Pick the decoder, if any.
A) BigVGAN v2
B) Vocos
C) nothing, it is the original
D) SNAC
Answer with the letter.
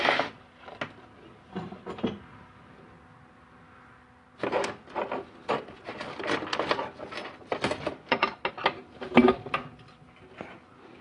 C